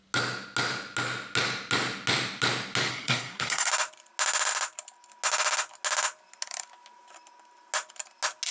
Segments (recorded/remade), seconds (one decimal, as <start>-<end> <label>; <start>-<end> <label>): 0.0-2.9 recorded; 2.9-3.7 remade; 3.7-8.5 recorded